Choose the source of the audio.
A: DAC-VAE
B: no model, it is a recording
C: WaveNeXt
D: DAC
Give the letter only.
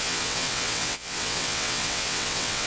C